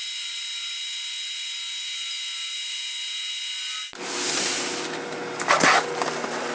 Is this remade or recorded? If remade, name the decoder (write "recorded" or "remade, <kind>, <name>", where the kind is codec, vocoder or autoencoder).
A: recorded